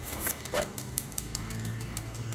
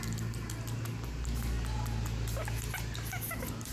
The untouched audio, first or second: second